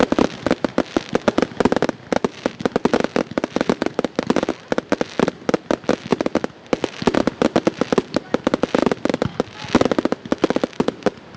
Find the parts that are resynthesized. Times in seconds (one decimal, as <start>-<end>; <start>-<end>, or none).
none